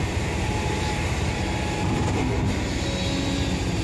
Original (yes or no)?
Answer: no